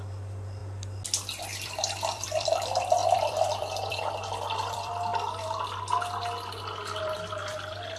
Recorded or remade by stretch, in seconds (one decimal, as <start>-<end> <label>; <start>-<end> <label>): 0.0-0.6 remade; 0.6-1.4 recorded; 1.4-5.1 remade; 5.1-7.0 recorded; 7.0-8.0 remade